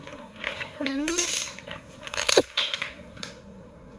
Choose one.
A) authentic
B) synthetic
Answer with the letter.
B